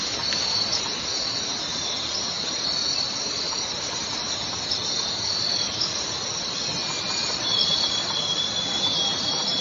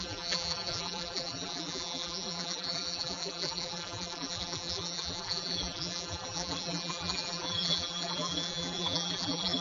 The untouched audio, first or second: first